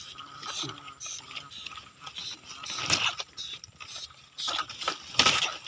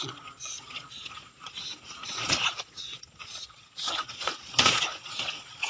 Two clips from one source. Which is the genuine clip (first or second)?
first